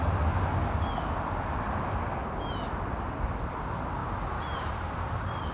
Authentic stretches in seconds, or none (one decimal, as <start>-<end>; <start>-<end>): 0.0-5.5